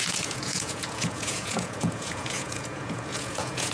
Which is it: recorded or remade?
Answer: remade